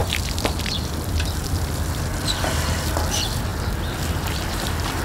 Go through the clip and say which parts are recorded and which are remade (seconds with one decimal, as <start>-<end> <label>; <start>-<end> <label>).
0.0-3.0 remade; 3.0-3.5 recorded; 3.5-5.0 remade

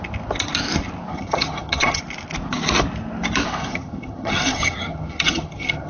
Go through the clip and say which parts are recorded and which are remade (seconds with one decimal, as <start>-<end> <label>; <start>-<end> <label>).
0.0-1.1 recorded; 1.1-2.0 remade; 2.0-3.6 recorded; 3.6-5.9 remade

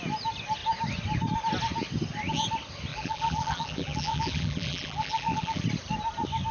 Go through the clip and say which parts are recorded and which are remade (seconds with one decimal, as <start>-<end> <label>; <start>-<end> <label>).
0.0-2.9 recorded; 2.9-5.6 remade; 5.6-6.5 recorded

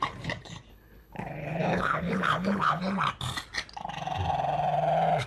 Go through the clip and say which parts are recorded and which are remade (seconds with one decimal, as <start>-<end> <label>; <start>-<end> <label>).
0.0-0.7 recorded; 0.7-2.8 remade; 2.8-5.3 recorded

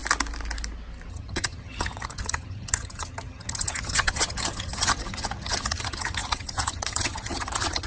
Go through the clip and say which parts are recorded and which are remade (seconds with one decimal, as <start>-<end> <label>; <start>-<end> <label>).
0.0-1.1 recorded; 1.1-7.9 remade

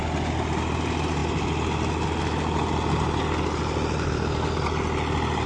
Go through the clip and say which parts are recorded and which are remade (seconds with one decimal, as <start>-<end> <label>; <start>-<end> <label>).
0.0-5.5 recorded